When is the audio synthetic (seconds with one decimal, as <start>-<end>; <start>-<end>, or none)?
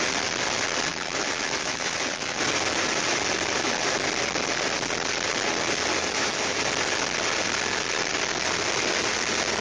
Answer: 0.9-2.4; 6.0-6.6